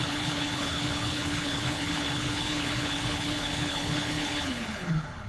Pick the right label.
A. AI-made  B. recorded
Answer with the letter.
A